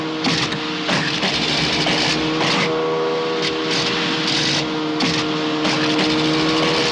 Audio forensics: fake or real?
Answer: real